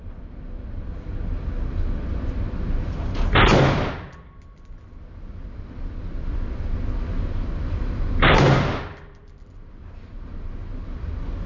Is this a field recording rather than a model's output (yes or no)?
yes